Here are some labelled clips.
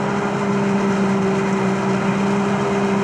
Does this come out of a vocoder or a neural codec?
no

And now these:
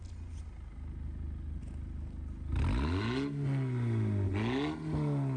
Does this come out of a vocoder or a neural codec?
no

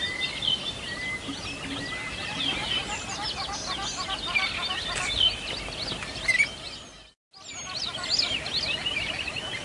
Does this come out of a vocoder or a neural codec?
no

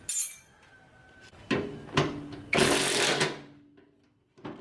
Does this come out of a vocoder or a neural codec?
no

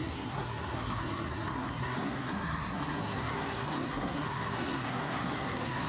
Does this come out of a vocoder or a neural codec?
yes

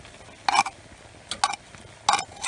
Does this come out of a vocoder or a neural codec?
no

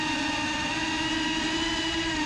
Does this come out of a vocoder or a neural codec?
no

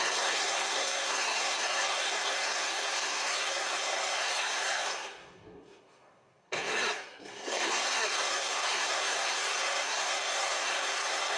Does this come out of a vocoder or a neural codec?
yes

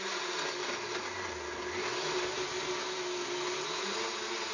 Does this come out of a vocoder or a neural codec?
no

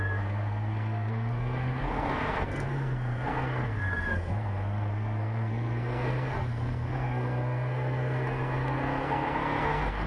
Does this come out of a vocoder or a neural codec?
yes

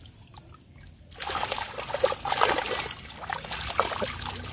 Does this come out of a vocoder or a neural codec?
no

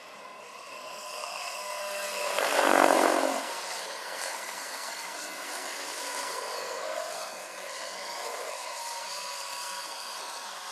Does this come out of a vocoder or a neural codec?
yes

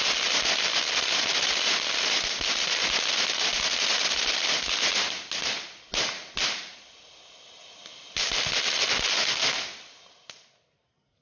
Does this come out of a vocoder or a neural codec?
no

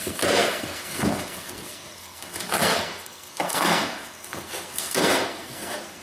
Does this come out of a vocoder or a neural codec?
yes